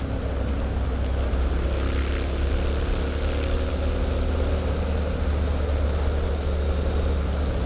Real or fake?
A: real